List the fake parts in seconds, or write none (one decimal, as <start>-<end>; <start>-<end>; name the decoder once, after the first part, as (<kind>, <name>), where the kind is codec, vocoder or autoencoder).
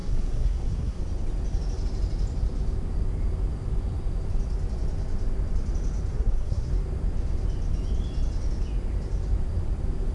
0.0-1.0 (codec, SNAC); 6.1-6.7